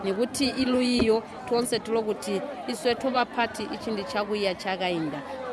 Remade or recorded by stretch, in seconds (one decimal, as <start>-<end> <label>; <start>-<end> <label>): 0.0-0.5 recorded; 0.5-1.4 remade; 1.4-3.1 recorded; 3.1-3.6 remade; 3.6-5.5 recorded